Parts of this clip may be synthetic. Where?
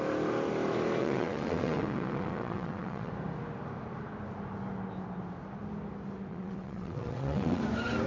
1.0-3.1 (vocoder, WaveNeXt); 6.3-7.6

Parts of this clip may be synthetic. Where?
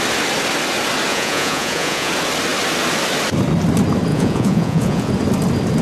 1.1-2.1 (vocoder, Vocos); 4.1-5.1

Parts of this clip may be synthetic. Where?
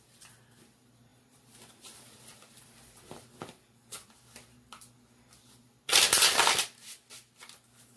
1.1-5.9 (vocoder, BigVGAN v2)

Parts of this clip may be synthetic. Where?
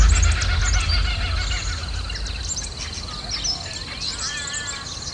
none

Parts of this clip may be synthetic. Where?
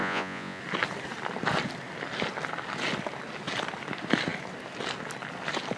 0.0-0.6 (vocoder, Vocos)